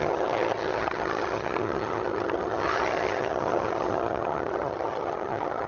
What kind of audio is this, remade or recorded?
remade